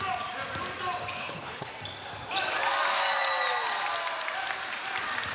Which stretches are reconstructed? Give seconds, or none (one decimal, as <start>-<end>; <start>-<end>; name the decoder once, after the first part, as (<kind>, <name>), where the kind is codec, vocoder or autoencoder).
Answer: 1.2-1.7 (codec, HILCodec)